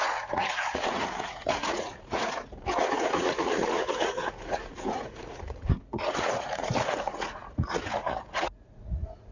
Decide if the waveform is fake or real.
fake